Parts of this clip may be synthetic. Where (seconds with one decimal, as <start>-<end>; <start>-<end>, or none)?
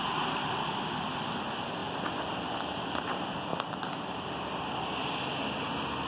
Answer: none